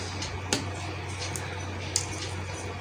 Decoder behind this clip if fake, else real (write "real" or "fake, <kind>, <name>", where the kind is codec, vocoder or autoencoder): real